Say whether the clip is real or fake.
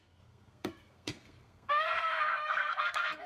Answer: fake